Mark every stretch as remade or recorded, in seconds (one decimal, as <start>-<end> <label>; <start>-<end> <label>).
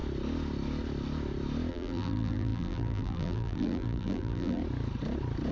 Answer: 0.0-1.7 recorded; 1.7-4.6 remade; 4.6-5.5 recorded